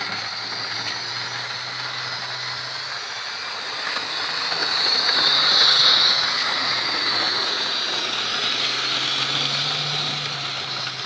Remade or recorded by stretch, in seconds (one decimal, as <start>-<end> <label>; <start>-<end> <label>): 0.0-4.6 recorded; 4.6-8.8 remade; 8.8-11.1 recorded